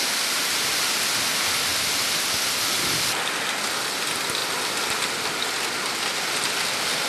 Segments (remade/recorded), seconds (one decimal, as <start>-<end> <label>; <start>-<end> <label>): 0.0-7.1 recorded